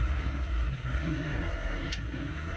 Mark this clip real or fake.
fake